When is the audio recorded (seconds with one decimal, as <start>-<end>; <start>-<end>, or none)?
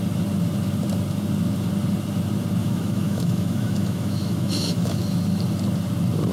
0.0-2.6; 5.0-6.3